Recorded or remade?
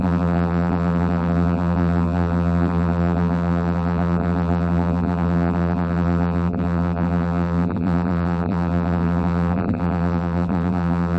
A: remade